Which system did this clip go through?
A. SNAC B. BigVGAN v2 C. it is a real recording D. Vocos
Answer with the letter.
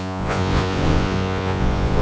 D